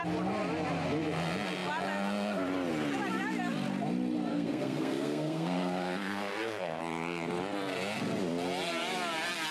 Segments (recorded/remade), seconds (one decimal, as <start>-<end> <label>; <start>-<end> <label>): 0.0-4.3 recorded; 4.3-6.8 remade; 6.8-9.5 recorded